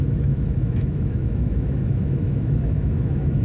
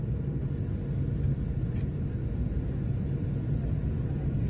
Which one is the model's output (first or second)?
first